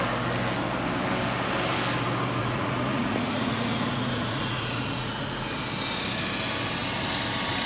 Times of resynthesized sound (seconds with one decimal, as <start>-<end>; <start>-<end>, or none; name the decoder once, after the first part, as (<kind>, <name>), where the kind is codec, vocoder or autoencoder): 2.4-5.6 (vocoder, Vocos)